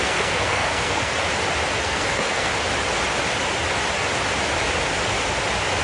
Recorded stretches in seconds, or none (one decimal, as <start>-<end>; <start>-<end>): 1.1-1.8; 2.5-5.8